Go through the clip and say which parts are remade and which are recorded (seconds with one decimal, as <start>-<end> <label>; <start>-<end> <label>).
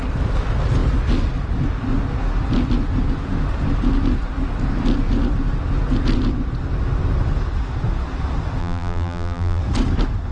0.0-8.6 recorded; 8.6-9.6 remade; 9.6-10.3 recorded